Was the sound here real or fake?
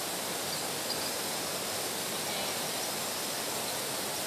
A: real